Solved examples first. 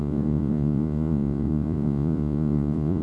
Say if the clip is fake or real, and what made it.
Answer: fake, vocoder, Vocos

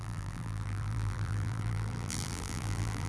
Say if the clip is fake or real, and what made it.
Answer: fake, vocoder, BigVGAN v2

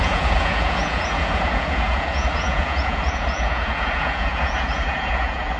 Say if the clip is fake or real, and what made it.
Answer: fake, vocoder, Vocos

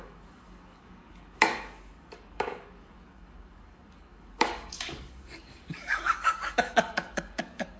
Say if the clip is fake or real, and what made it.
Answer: fake, codec, DAC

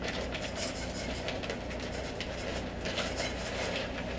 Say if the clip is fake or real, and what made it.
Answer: real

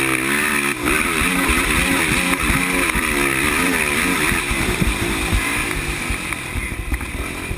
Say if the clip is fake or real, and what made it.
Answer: real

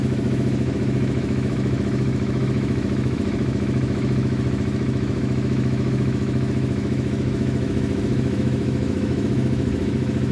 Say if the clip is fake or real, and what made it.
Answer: fake, autoencoder, DAC-VAE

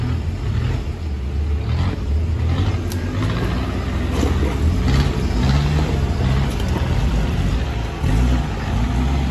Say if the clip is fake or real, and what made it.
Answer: real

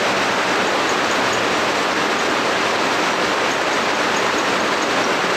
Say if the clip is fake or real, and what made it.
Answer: fake, vocoder, BigVGAN v2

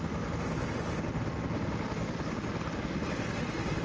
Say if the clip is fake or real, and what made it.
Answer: real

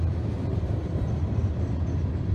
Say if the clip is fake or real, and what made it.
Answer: real